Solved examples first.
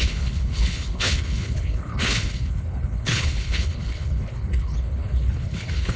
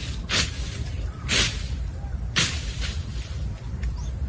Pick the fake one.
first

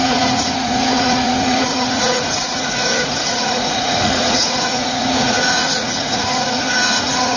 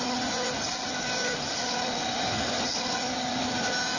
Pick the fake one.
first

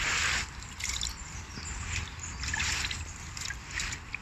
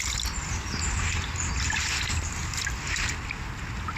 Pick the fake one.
first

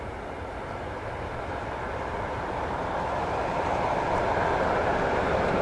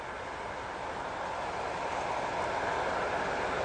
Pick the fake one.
first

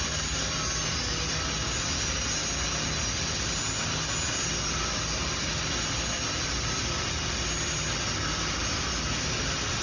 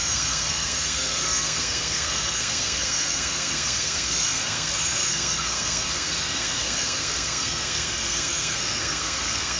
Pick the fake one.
second